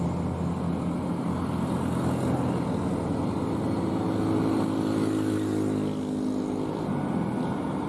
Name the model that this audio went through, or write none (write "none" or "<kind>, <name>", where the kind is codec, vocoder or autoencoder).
none